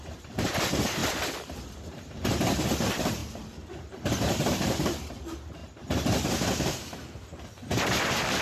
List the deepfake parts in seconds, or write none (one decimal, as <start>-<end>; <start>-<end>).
0.0-1.0; 1.7-5.6; 6.3-8.4